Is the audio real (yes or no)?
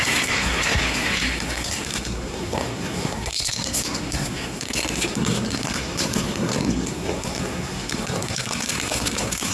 no